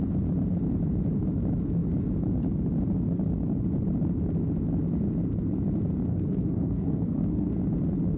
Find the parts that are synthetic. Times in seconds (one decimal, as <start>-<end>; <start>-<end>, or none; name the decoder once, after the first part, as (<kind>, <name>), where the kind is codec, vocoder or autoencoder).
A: 6.1-7.5 (codec, SNAC)